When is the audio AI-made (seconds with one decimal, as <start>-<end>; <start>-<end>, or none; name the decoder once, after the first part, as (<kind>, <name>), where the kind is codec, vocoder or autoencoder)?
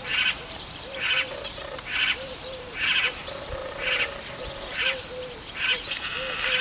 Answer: 0.0-3.6 (vocoder, BigVGAN v2); 4.4-6.6